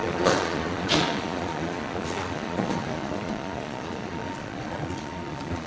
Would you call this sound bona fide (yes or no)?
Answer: no